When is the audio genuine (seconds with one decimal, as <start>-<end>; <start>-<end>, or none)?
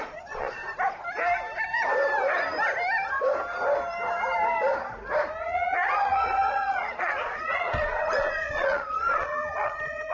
0.6-5.4